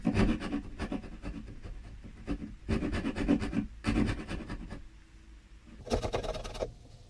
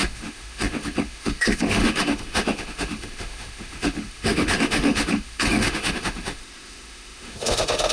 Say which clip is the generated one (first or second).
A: second